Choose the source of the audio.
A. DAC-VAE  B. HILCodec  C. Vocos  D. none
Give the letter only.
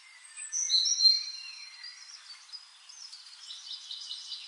D